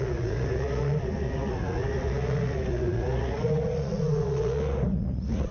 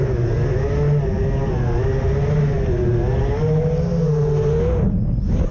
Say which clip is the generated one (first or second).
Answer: first